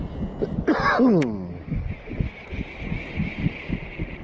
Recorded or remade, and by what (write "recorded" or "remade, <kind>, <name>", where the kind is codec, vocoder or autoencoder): recorded